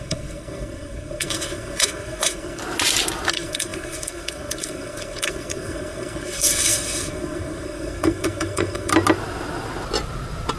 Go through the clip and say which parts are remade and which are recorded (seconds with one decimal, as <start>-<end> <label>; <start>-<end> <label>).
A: 0.0-2.6 remade; 2.6-3.3 recorded; 3.3-8.9 remade; 8.9-10.6 recorded